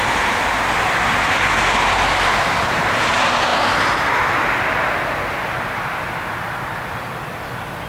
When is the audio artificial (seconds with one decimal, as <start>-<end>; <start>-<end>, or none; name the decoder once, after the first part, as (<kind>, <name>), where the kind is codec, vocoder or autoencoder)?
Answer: none